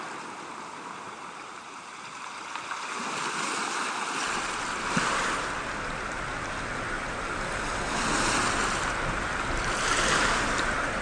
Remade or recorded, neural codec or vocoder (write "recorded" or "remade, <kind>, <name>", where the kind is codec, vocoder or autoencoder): recorded